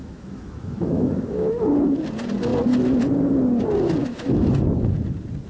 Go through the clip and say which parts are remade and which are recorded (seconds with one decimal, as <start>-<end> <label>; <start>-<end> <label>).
0.0-1.5 remade; 1.5-4.0 recorded; 4.0-4.5 remade; 4.5-5.5 recorded

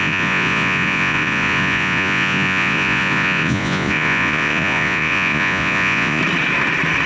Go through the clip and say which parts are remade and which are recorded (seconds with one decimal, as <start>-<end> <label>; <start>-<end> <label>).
0.0-6.2 remade; 6.2-7.1 recorded